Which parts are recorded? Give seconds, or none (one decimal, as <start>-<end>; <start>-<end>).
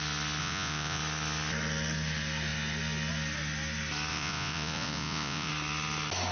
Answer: 0.0-0.4; 1.0-4.1; 5.5-6.3